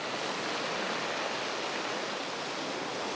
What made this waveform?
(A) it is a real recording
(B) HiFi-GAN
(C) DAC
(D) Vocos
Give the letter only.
A